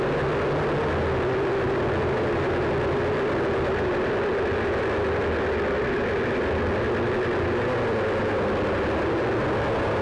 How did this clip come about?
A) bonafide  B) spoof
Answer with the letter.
A